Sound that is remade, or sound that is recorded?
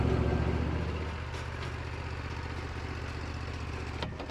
recorded